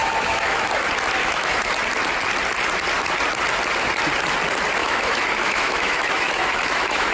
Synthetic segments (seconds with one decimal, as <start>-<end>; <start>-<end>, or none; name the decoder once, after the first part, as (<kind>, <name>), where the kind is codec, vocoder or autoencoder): 0.0-0.6 (autoencoder, DAC-VAE); 1.2-1.7; 4.8-7.1